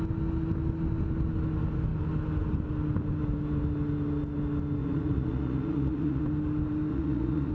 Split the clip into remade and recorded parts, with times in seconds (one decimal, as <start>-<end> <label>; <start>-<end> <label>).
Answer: 0.0-4.8 recorded; 4.8-6.2 remade; 6.2-6.9 recorded; 6.9-7.5 remade